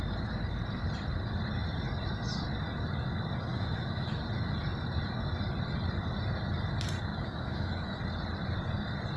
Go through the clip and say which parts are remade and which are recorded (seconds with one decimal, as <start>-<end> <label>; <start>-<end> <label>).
0.0-3.5 recorded; 3.5-4.2 remade; 4.2-7.1 recorded; 7.1-8.0 remade; 8.0-9.2 recorded